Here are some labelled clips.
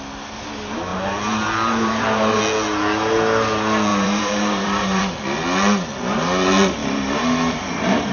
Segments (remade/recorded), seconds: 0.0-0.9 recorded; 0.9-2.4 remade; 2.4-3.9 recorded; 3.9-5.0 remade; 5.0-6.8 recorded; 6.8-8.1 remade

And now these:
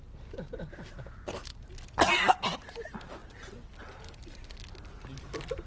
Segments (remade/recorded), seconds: 0.0-5.7 recorded

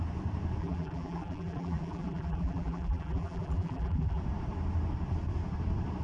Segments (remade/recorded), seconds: 0.0-0.6 recorded; 0.6-4.2 remade; 4.2-6.0 recorded

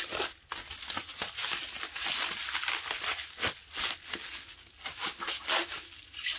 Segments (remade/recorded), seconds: 0.0-6.4 recorded

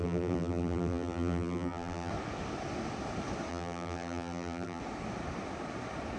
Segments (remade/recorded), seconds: 0.0-2.1 remade; 2.1-3.5 recorded; 3.5-4.8 remade; 4.8-6.2 recorded